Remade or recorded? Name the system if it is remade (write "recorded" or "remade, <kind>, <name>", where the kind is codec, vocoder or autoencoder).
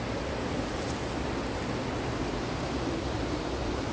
recorded